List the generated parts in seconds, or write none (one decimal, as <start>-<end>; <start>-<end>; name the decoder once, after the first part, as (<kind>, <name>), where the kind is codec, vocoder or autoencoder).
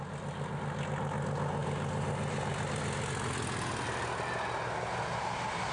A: 1.6-2.8 (vocoder, BigVGAN v2)